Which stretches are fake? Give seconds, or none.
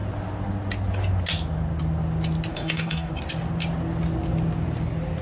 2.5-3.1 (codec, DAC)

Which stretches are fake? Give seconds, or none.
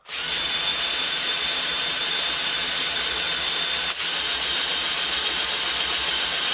0.7-3.2 (vocoder, BigVGAN v2)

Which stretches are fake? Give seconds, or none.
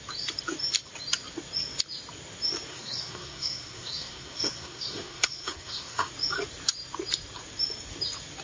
2.7-6.1 (codec, SNAC)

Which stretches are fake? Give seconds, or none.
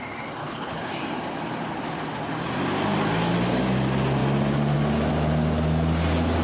0.4-0.9 (codec, HILCodec)